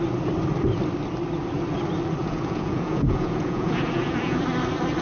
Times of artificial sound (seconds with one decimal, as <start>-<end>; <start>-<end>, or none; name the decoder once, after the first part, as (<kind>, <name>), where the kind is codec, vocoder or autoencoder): 2.2-4.4 (vocoder, Vocos)